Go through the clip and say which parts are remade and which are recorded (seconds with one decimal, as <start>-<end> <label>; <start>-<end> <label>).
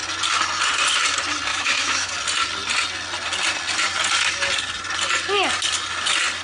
0.0-1.5 recorded; 1.5-2.1 remade; 2.1-6.4 recorded